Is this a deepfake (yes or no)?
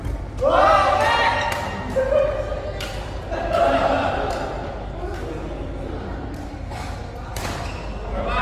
no